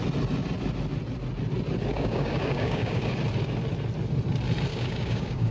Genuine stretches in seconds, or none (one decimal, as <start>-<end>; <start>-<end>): 0.0-1.9; 3.1-4.7

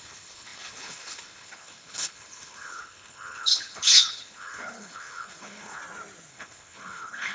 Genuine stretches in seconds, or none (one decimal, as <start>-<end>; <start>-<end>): 5.8-6.3

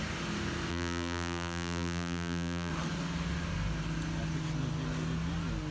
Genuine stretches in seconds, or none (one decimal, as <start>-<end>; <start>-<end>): 0.0-0.7; 2.7-5.7

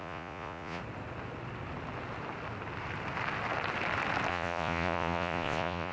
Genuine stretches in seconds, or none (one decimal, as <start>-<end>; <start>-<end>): 0.8-4.3

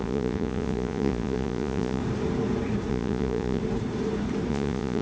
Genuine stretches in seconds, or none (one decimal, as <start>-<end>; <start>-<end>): 2.0-2.9; 3.6-4.5

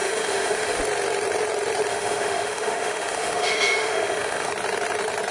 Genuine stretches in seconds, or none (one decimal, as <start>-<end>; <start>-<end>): 0.8-1.9; 4.5-5.3